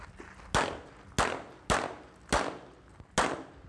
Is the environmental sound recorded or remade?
recorded